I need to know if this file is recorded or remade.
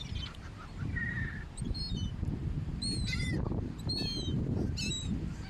remade